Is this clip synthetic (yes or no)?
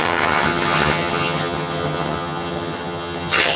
yes